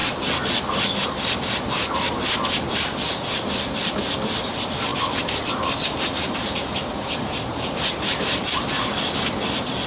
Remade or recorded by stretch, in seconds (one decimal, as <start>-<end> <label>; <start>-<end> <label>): 0.0-3.6 recorded; 3.6-4.9 remade; 4.9-5.5 recorded; 5.5-9.9 remade